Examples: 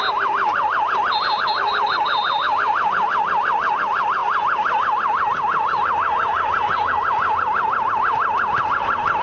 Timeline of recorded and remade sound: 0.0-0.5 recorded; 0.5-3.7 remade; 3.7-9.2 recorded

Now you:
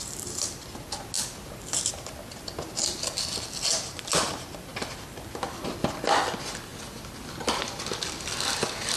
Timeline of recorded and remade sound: 0.0-4.7 recorded; 4.7-6.1 remade; 6.1-9.0 recorded